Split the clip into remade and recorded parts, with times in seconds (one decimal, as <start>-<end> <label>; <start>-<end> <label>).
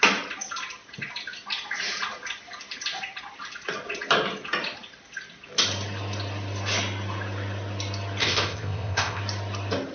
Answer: 0.0-8.2 recorded; 8.2-9.2 remade; 9.2-9.9 recorded